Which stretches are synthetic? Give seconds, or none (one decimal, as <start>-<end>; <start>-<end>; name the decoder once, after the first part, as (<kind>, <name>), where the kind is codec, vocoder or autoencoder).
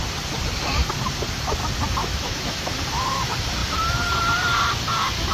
2.0-2.7 (autoencoder, DAC-VAE)